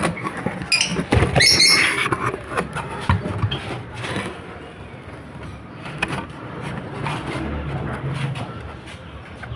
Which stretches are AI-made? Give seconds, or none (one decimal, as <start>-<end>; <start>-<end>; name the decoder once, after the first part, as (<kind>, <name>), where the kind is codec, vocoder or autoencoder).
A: none